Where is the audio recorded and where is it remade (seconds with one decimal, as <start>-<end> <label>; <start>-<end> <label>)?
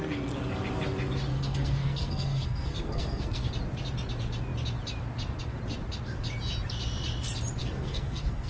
0.0-1.3 recorded; 1.3-3.5 remade; 3.5-7.6 recorded; 7.6-8.5 remade